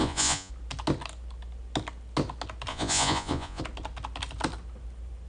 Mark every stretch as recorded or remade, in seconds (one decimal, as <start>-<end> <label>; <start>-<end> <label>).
0.0-0.5 remade; 0.5-2.7 recorded; 2.7-3.6 remade; 3.6-5.3 recorded

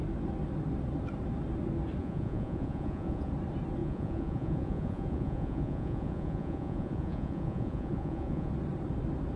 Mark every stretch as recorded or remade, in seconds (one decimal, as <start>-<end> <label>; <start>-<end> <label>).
0.0-2.0 recorded; 2.0-3.3 remade; 3.3-3.8 recorded; 3.8-8.5 remade; 8.5-9.4 recorded

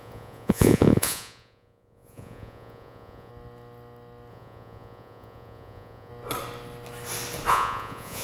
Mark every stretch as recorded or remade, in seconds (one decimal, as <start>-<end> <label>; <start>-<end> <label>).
0.0-3.3 remade; 3.3-4.3 recorded; 4.3-6.1 remade; 6.1-7.5 recorded; 7.5-8.2 remade